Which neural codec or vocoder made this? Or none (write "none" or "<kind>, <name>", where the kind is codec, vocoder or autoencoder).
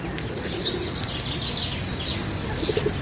none